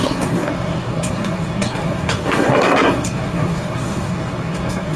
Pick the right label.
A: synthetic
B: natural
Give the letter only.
A